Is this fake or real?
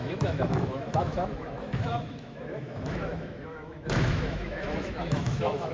fake